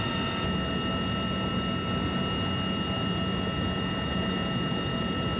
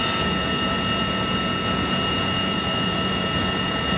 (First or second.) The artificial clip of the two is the second